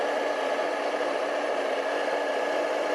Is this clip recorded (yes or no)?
yes